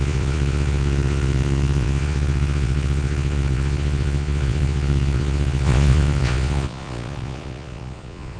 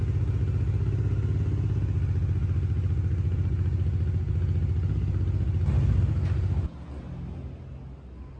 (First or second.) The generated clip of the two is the first